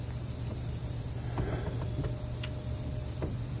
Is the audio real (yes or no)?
yes